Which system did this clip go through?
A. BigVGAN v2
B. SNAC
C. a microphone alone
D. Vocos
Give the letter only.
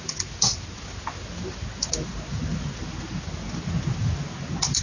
C